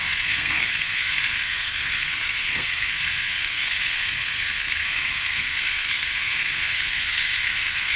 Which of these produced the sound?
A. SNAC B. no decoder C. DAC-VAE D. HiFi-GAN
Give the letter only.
A